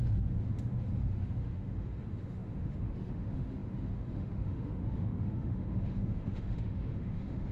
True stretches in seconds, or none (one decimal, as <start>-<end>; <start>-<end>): none